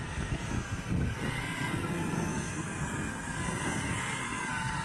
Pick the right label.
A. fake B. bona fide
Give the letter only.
A